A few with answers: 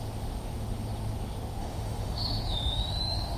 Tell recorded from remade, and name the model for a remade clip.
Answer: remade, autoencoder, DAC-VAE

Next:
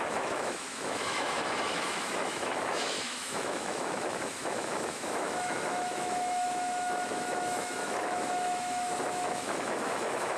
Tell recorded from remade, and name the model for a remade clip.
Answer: remade, autoencoder, DAC-VAE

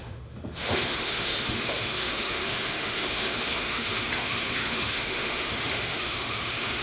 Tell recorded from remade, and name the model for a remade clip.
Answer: remade, autoencoder, DAC-VAE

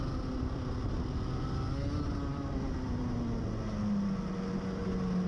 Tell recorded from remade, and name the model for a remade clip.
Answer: recorded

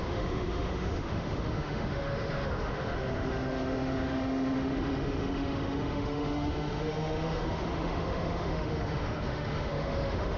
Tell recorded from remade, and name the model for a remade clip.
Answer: remade, autoencoder, DAC-VAE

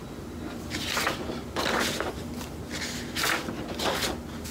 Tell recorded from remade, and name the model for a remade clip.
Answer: recorded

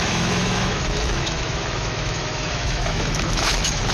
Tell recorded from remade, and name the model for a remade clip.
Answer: remade, autoencoder, DAC-VAE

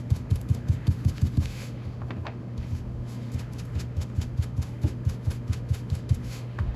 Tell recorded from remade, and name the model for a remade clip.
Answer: remade, autoencoder, DAC-VAE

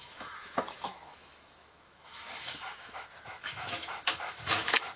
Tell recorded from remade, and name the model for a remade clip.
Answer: remade, autoencoder, DAC-VAE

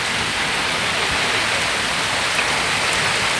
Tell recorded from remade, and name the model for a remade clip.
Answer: recorded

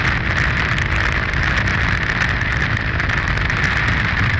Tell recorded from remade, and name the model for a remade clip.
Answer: recorded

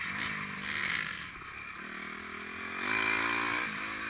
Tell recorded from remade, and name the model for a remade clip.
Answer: recorded